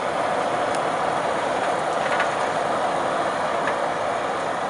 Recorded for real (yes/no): yes